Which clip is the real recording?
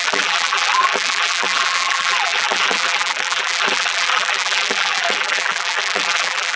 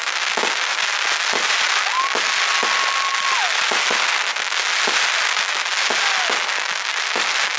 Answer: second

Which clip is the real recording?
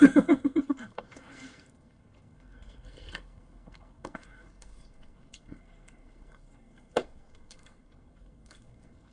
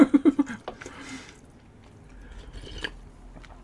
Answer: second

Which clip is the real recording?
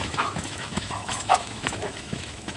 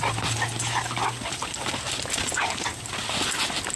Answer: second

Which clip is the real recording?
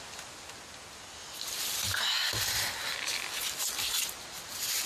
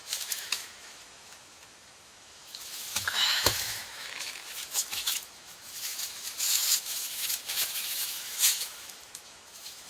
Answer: first